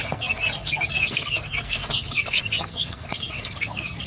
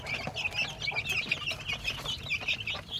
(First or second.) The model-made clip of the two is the first